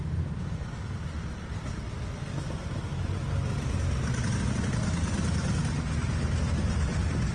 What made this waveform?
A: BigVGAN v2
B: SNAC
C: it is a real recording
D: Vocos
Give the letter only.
C